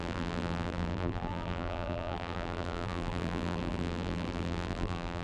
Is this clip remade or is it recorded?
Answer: remade